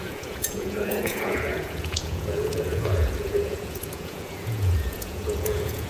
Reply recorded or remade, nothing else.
remade